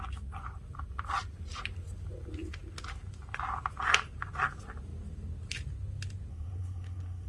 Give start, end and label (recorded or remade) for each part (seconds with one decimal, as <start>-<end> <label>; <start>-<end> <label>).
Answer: 0.0-6.3 recorded; 6.3-7.3 remade